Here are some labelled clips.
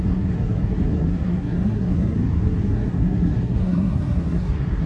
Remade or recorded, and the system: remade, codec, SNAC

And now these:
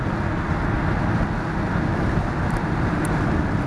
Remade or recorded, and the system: recorded